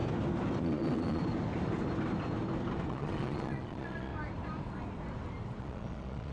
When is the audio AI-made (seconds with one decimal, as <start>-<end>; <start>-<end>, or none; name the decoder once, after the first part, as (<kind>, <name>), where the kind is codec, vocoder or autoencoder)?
0.6-1.2 (vocoder, Vocos); 2.9-4.1; 5.6-6.3